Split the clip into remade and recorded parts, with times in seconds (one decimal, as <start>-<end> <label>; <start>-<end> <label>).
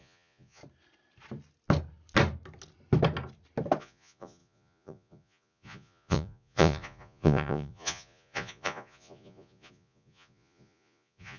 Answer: 0.0-0.6 remade; 0.6-3.8 recorded; 3.8-11.4 remade